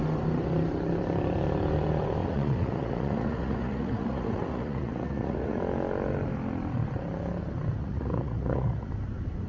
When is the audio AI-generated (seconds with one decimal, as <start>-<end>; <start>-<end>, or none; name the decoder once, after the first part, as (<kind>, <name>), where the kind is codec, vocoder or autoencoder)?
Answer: 2.2-5.6 (vocoder, Vocos); 7.8-8.9